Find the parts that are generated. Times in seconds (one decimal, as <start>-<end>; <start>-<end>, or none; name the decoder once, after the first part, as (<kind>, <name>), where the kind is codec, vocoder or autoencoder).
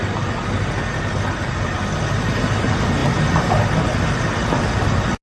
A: none